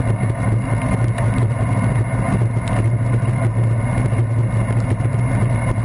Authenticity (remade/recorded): recorded